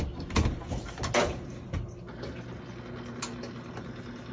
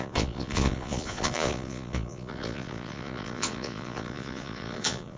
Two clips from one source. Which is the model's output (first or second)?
second